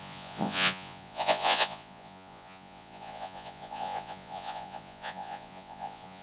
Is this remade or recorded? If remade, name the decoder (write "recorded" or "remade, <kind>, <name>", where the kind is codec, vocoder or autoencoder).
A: remade, vocoder, Vocos